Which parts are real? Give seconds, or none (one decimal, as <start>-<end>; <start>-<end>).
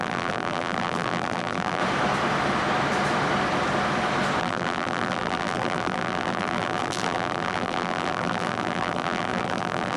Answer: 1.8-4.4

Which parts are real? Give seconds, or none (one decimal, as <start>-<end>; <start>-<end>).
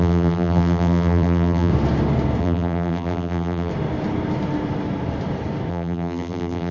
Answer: 1.7-2.4; 3.7-5.7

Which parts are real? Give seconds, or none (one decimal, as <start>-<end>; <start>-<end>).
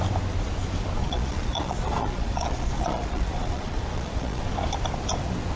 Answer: 0.0-1.0; 4.4-5.6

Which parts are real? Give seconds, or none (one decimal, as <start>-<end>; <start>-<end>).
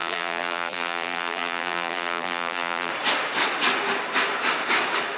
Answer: 2.9-5.2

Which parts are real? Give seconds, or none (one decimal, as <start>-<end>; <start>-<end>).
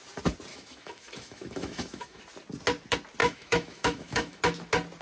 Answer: 0.0-0.5; 2.2-3.2; 4.4-5.0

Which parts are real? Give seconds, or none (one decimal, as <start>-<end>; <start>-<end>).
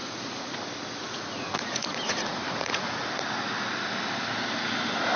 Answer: 0.5-1.0; 3.0-5.2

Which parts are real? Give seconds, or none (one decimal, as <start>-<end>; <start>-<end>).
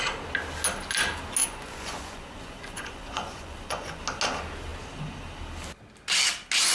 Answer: 0.0-1.4; 4.0-6.7